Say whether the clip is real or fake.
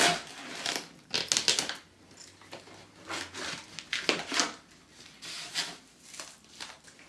real